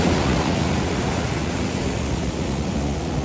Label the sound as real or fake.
fake